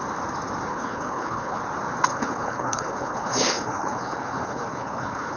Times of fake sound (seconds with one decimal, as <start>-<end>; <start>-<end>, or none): 0.7-1.6; 2.1-5.4